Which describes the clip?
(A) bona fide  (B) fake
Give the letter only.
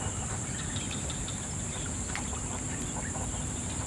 B